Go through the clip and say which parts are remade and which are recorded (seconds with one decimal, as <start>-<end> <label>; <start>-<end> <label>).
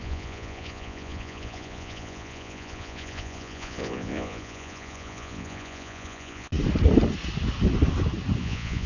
0.0-6.5 remade; 6.5-8.4 recorded; 8.4-8.9 remade